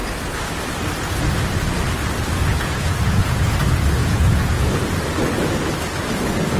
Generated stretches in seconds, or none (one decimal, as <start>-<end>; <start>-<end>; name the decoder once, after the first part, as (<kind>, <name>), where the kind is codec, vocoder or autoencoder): 2.5-3.5 (vocoder, Vocos); 4.0-4.8